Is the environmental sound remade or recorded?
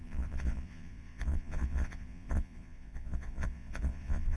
remade